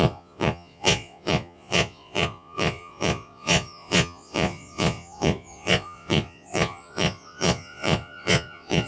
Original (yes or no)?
no